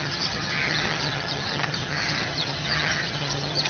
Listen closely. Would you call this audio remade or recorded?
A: remade